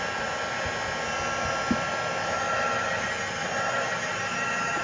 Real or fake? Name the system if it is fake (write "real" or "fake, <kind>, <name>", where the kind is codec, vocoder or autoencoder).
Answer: real